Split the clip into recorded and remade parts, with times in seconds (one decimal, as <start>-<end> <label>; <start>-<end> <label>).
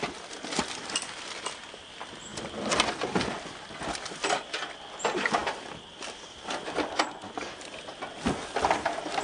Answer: 0.0-9.2 recorded